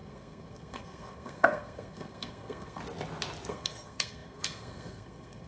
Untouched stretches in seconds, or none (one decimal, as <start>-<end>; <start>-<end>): 2.8-3.5